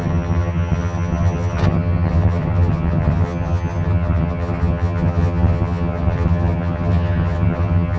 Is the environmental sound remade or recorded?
remade